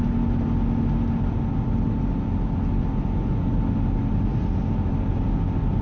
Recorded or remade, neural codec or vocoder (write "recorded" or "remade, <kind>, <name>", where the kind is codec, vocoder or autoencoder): recorded